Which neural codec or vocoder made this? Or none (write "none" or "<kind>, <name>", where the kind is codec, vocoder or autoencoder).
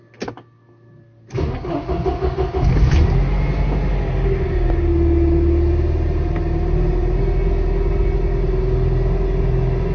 none